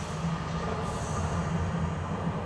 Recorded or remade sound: recorded